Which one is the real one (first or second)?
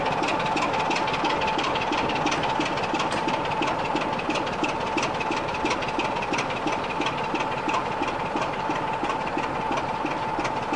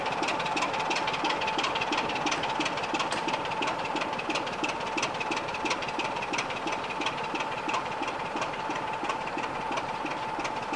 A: first